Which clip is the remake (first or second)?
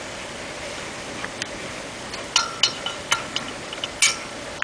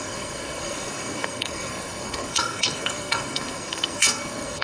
second